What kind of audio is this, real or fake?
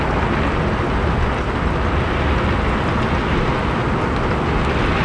real